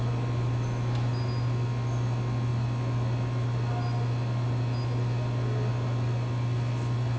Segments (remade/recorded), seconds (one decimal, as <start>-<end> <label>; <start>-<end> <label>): 0.0-7.2 recorded

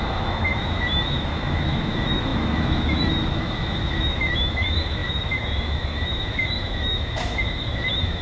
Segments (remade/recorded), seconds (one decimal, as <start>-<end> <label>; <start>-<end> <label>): 0.0-8.2 remade

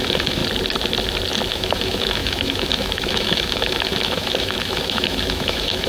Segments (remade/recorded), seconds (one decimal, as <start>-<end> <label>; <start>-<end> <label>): 0.0-0.4 remade; 0.4-1.5 recorded; 1.5-5.9 remade

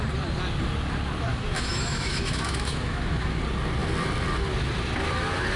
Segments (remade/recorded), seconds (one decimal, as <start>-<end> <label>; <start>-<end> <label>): 0.0-1.3 recorded; 1.3-3.4 remade; 3.4-5.6 recorded

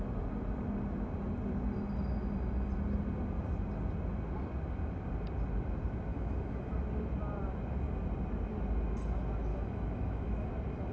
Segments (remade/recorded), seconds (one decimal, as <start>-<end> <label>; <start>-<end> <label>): 0.0-6.1 recorded; 6.1-6.7 remade; 6.7-9.5 recorded; 9.5-10.5 remade; 10.5-10.9 recorded

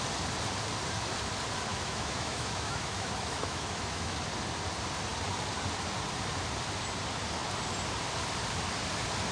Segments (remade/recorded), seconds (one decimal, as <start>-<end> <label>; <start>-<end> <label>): 0.0-1.7 recorded; 1.7-4.2 remade; 4.2-9.3 recorded

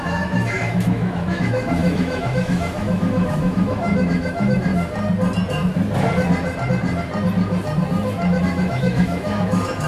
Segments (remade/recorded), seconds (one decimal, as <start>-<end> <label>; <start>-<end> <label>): 0.0-4.7 remade; 4.7-8.4 recorded; 8.4-9.9 remade